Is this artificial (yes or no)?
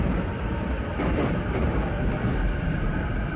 yes